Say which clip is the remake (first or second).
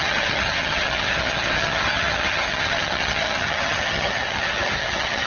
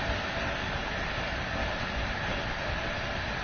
first